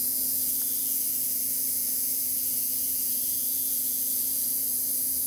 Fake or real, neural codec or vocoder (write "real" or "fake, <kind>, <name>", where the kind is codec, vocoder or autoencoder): fake, vocoder, Vocos